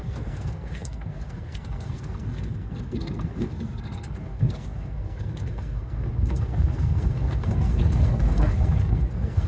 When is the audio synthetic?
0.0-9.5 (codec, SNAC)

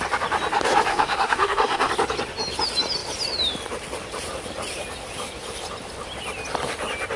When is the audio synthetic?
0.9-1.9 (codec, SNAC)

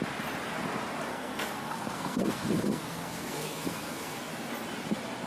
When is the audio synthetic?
1.1-4.3 (codec, SNAC)

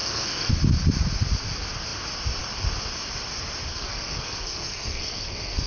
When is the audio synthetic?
0.0-0.5 (codec, SNAC); 3.7-5.7

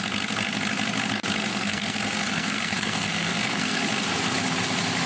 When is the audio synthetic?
1.5-3.8 (codec, SNAC)

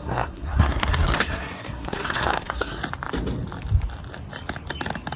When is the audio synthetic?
0.0-2.8 (codec, SNAC)

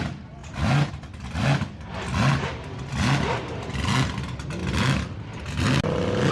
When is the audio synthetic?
none